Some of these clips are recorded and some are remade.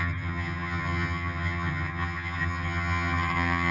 remade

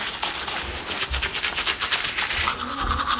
recorded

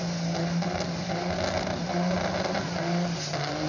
recorded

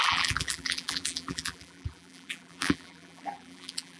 remade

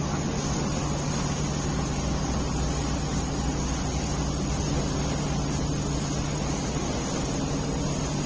recorded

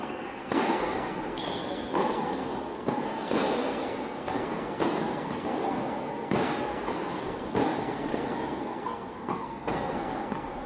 remade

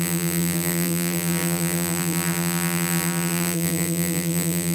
remade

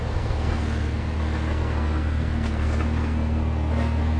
remade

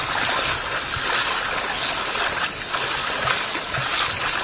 recorded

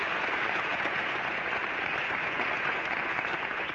remade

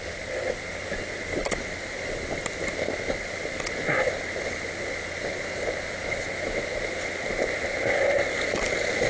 recorded